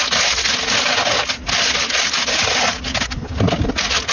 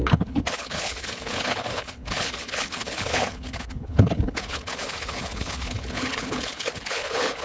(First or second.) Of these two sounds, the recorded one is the first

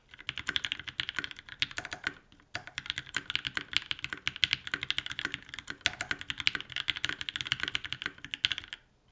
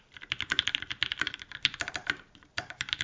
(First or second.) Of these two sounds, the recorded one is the first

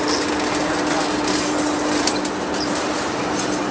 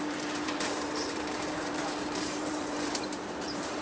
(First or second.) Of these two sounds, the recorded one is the first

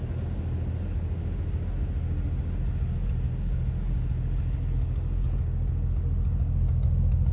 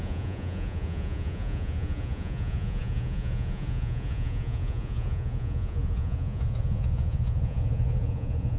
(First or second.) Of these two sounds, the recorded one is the first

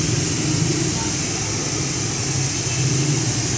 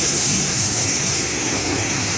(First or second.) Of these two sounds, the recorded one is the first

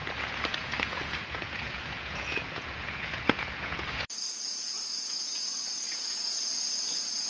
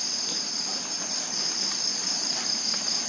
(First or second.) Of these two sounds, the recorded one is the second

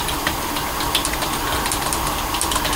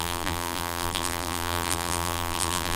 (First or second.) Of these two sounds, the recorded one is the first